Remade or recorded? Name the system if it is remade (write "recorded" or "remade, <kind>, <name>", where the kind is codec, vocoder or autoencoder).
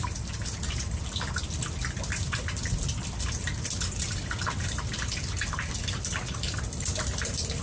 remade, vocoder, BigVGAN v2